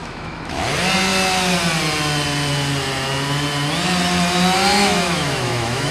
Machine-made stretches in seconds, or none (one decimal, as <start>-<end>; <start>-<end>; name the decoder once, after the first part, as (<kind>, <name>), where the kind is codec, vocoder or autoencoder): 0.0-0.6 (autoencoder, DAC-VAE); 4.8-5.9